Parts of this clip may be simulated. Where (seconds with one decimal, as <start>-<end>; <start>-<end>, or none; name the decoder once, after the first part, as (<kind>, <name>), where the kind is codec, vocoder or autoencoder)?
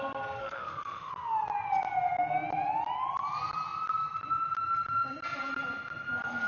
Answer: 0.4-1.1 (autoencoder, DAC-VAE)